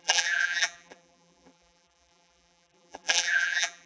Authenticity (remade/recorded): remade